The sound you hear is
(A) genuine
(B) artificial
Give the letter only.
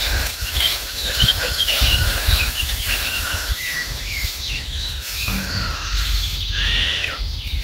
B